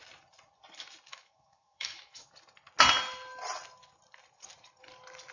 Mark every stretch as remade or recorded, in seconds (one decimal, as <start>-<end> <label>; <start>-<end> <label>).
0.0-1.1 recorded; 1.1-2.3 remade; 2.3-5.3 recorded